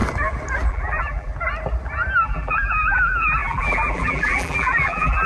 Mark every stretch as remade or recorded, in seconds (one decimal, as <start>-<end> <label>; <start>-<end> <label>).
0.0-0.7 recorded; 0.7-1.3 remade; 1.3-2.2 recorded; 2.2-5.3 remade